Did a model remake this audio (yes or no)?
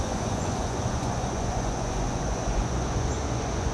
yes